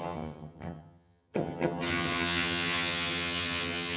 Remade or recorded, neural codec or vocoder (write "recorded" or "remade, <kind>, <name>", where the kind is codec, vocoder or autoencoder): remade, vocoder, HiFi-GAN